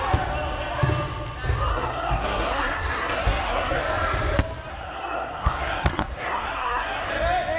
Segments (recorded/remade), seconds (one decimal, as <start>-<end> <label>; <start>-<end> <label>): 0.0-1.7 recorded; 1.7-3.8 remade; 3.8-4.7 recorded; 4.7-7.1 remade; 7.1-7.6 recorded